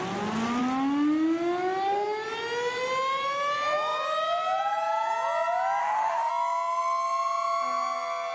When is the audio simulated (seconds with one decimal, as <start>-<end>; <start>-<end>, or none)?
5.8-6.3